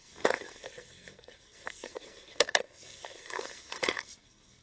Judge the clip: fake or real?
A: fake